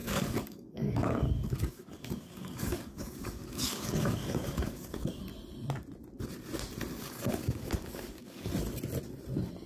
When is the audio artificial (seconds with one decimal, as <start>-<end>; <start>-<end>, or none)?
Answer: 0.0-5.2; 6.9-8.5